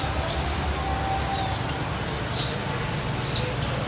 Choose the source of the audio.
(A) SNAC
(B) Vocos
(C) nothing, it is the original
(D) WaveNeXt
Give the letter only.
C